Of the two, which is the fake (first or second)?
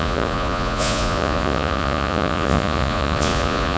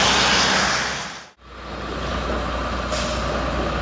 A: first